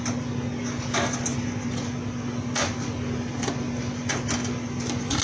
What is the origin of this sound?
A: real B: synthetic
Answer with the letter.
A